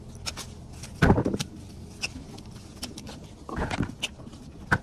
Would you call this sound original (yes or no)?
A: yes